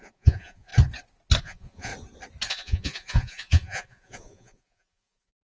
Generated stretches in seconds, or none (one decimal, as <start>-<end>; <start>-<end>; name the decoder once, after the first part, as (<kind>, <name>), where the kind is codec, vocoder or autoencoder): 0.0-0.7 (vocoder, Vocos); 1.4-1.9; 2.5-5.6